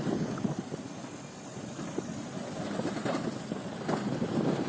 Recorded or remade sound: recorded